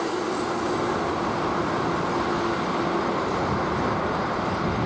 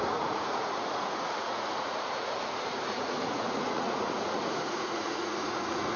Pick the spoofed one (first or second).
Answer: second